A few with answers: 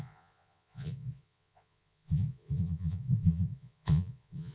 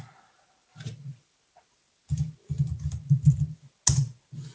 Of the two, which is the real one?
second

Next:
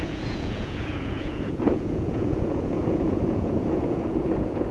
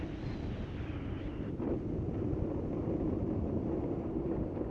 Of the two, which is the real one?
second